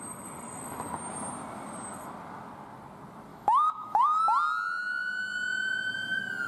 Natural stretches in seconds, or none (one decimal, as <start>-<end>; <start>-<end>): 0.0-3.3; 4.2-6.5